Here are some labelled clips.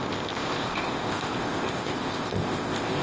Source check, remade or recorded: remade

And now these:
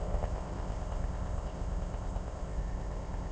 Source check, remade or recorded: remade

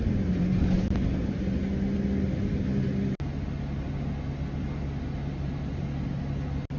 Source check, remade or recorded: recorded